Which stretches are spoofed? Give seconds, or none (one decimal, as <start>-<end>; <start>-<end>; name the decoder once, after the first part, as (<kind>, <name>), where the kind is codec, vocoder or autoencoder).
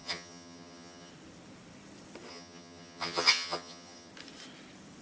0.0-1.1 (vocoder, HiFi-GAN); 2.3-4.1